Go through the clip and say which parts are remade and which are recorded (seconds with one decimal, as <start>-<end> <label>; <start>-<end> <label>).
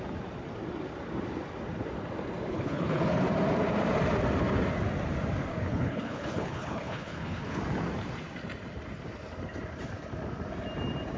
0.0-2.5 recorded; 2.5-3.0 remade; 3.0-5.5 recorded; 5.5-7.6 remade; 7.6-11.2 recorded